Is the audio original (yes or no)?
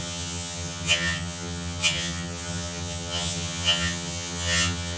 no